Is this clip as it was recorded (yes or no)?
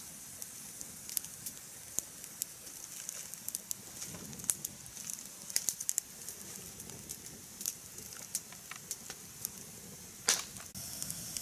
yes